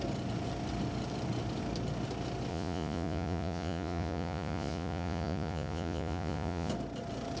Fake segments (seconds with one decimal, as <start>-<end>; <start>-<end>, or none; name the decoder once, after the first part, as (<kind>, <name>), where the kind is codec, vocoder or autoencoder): 2.5-6.7 (vocoder, Vocos)